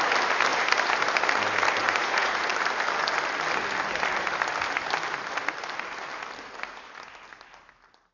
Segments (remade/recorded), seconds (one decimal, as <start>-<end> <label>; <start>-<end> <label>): 0.0-1.8 recorded; 1.8-2.5 remade; 2.5-8.1 recorded